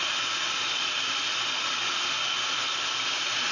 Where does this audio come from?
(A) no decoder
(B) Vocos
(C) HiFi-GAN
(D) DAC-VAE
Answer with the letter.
A